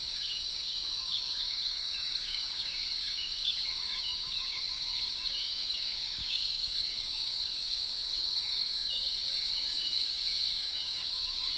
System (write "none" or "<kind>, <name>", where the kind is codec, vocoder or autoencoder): codec, DAC